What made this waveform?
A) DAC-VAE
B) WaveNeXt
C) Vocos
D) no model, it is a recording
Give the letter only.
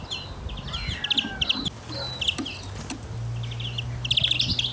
D